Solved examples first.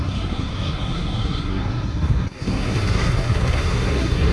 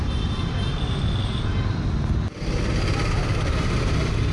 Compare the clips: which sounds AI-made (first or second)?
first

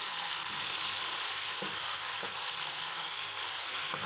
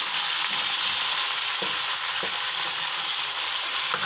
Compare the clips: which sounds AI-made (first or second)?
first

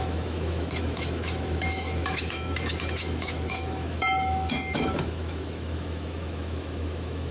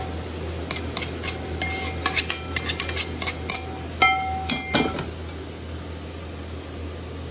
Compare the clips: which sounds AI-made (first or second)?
first